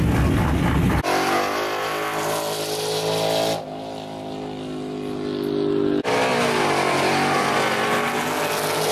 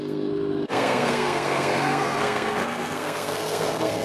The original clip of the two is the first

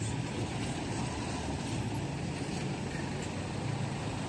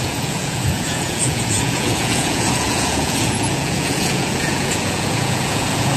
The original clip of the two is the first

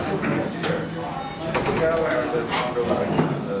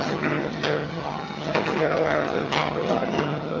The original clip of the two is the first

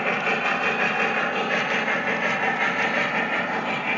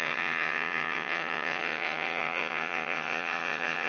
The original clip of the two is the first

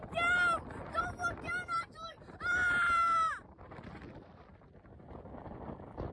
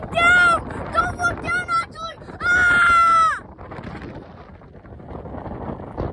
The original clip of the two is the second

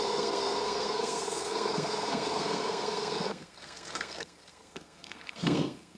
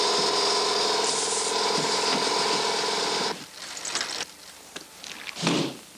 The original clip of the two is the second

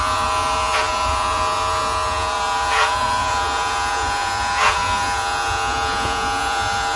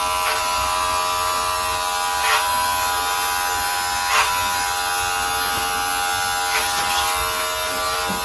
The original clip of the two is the second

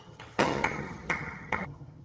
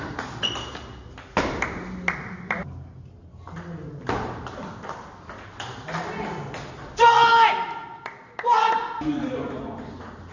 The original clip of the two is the second